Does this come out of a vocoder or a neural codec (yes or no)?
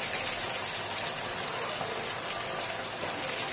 no